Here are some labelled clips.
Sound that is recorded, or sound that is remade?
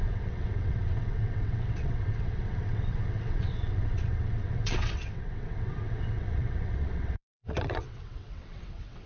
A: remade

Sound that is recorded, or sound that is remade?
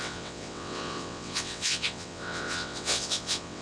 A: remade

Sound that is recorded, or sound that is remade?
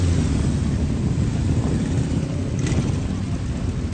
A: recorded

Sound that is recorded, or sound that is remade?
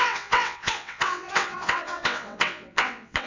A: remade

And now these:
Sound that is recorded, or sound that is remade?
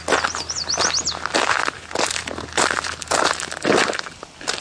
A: recorded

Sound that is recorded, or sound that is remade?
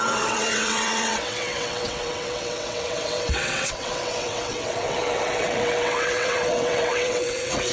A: remade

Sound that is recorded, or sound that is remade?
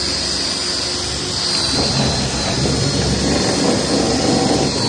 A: recorded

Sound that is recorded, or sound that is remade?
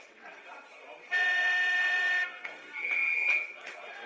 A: remade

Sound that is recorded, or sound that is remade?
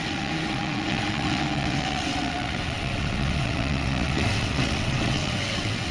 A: remade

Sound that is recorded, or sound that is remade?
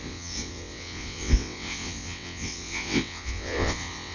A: remade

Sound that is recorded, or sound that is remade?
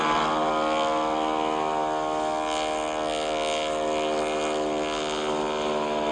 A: recorded